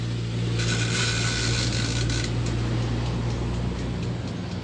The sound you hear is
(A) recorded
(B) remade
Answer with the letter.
A